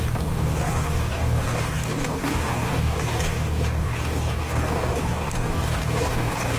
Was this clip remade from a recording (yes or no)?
yes